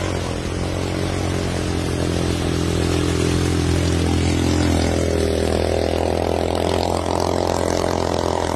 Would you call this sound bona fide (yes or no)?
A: yes